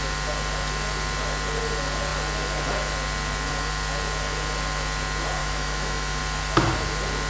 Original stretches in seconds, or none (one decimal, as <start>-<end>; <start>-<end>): 0.0-5.4; 6.2-7.3